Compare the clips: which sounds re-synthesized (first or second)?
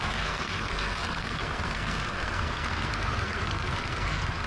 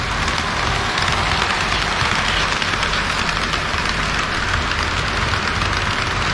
first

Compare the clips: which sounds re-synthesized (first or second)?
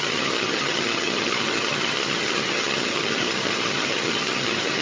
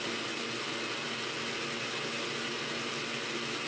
first